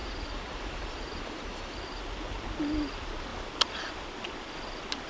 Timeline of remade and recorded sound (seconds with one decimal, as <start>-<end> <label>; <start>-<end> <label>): 0.0-2.0 remade; 2.0-5.1 recorded